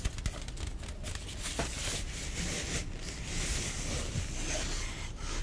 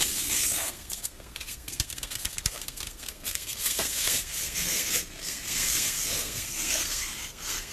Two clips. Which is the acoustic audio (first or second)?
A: first